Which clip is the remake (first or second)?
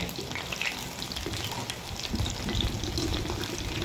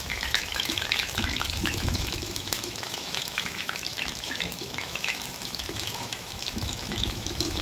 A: second